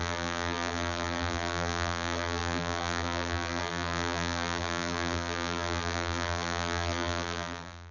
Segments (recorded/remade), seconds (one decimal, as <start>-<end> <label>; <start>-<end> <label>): 0.0-7.9 remade